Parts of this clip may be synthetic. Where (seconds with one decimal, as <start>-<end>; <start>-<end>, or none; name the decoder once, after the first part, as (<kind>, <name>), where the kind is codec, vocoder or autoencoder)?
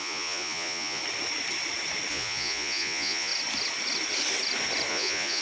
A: 0.0-1.0 (vocoder, Vocos); 2.1-3.3; 4.9-5.4